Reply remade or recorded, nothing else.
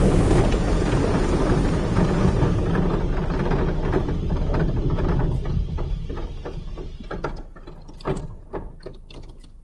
recorded